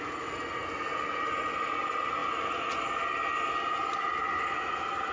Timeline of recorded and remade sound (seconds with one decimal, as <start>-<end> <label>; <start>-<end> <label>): 0.0-5.1 recorded